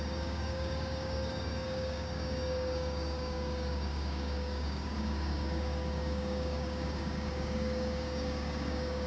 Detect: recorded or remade remade